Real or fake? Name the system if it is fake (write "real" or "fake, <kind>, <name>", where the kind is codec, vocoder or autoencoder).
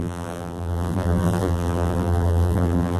fake, vocoder, BigVGAN v2